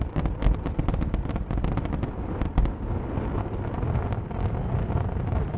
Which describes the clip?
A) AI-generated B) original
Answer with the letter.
B